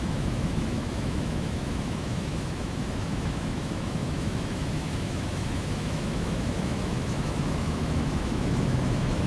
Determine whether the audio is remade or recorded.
remade